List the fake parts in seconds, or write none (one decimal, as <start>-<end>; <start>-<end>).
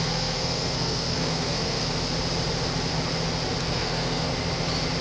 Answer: 0.0-1.8; 3.6-4.3